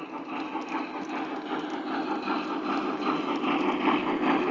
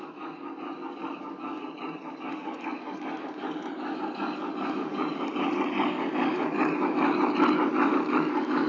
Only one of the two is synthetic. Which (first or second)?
second